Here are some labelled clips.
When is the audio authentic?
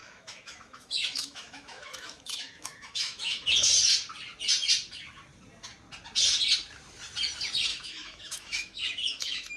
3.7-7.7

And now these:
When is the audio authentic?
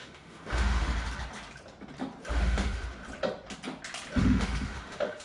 0.9-2.3; 3.0-4.2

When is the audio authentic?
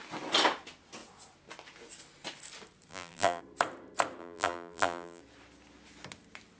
0.0-2.9; 3.4-4.2; 5.2-6.6